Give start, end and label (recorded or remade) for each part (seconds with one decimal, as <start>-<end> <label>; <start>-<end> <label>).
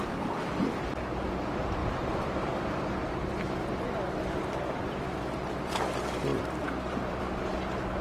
0.0-1.8 recorded; 1.8-5.8 remade; 5.8-6.3 recorded; 6.3-7.2 remade; 7.2-8.0 recorded